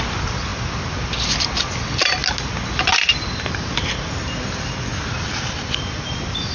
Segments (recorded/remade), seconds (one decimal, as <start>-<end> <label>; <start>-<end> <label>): 0.0-6.5 recorded